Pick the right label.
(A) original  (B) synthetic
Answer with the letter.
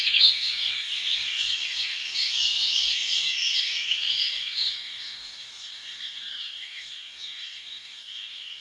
B